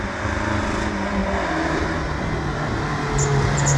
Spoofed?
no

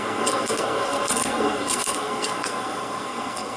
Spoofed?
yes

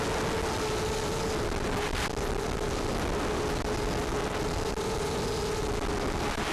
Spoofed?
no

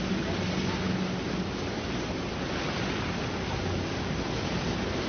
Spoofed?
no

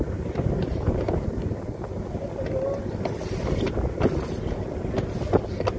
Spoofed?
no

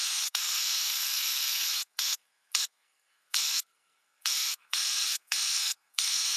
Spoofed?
yes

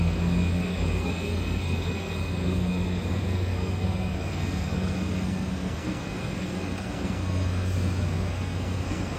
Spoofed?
yes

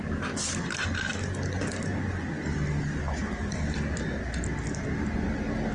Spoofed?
no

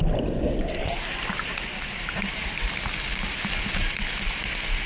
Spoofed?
no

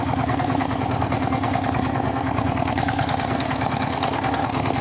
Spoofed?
yes